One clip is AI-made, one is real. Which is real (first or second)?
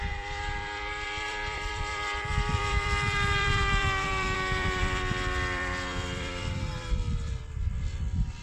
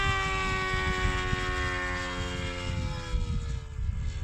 second